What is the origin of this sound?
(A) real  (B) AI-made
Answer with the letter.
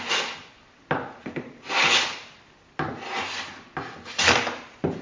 A